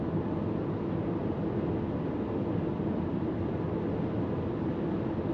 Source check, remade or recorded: recorded